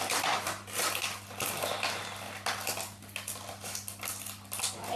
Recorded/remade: recorded